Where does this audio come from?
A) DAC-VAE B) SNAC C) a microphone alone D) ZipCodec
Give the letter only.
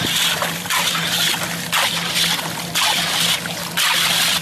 C